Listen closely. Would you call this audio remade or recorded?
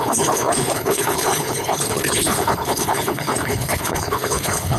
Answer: remade